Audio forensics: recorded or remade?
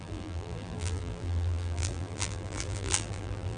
remade